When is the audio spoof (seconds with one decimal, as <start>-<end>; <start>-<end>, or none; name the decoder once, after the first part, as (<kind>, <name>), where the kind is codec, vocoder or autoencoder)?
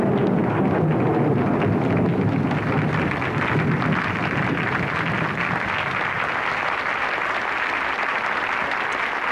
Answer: none